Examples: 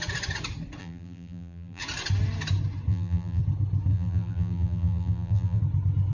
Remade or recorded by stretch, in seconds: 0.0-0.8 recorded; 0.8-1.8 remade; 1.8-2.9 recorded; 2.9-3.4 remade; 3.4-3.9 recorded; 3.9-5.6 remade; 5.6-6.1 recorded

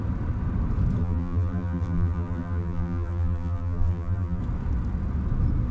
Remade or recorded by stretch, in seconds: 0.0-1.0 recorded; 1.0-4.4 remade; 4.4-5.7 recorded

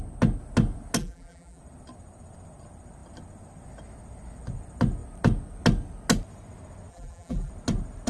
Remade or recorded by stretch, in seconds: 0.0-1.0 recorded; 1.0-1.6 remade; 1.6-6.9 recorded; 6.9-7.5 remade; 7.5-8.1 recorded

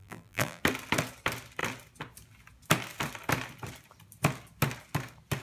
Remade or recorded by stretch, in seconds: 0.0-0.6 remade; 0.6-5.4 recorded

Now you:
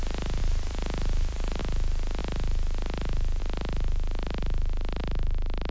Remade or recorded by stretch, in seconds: 0.0-0.4 recorded; 0.4-1.6 remade; 1.6-5.7 recorded